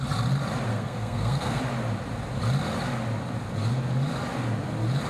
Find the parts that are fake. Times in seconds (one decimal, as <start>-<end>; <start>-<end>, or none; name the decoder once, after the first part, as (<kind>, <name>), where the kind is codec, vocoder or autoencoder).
0.7-1.6 (codec, SNAC)